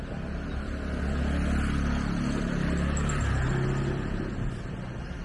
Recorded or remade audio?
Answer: recorded